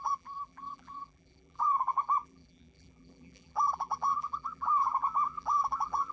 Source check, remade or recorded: remade